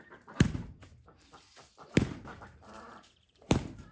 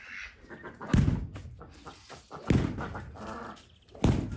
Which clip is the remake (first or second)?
first